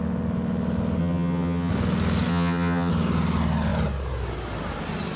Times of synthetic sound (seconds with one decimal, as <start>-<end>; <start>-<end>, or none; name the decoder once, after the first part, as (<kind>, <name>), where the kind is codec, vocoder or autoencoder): 1.0-1.7 (vocoder, HiFi-GAN); 2.3-2.9